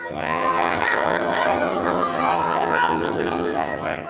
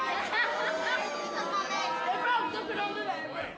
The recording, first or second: second